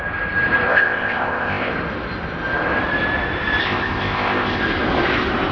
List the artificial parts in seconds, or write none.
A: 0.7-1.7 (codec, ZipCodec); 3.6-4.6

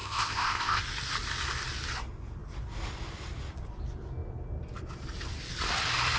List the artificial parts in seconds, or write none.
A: 0.0-0.8 (codec, ZipCodec)